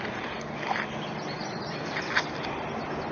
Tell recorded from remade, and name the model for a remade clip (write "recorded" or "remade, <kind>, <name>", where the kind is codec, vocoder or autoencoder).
recorded